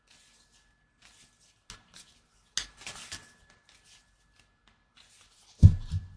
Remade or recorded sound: recorded